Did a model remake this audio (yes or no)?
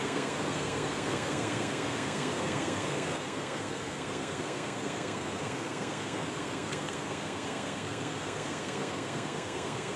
yes